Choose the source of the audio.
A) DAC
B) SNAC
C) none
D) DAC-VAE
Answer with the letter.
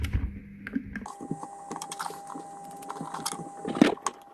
C